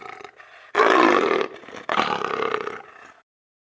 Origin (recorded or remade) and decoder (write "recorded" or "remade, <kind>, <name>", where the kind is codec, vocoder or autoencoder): recorded